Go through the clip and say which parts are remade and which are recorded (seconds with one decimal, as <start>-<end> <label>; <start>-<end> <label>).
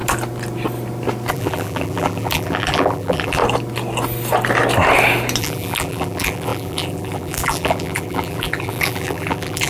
0.0-1.3 recorded; 1.3-3.4 remade; 3.4-5.4 recorded; 5.4-9.7 remade